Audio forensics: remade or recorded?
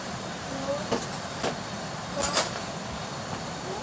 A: recorded